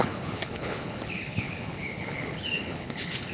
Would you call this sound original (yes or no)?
no